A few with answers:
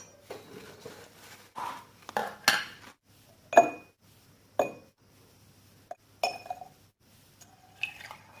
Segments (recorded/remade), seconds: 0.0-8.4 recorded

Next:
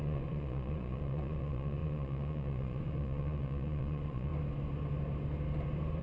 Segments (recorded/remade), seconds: 0.0-4.3 remade; 4.3-6.0 recorded

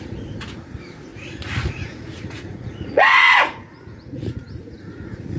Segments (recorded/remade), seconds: 0.0-5.4 remade

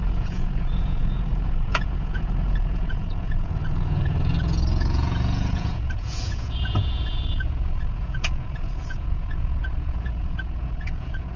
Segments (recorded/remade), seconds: 0.0-11.4 remade

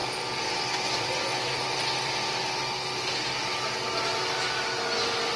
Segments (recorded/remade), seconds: 0.0-5.4 recorded

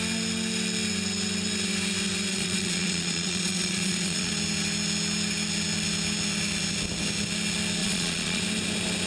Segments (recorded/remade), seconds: 0.0-2.3 recorded; 2.3-4.3 remade; 4.3-7.8 recorded; 7.8-8.4 remade; 8.4-9.1 recorded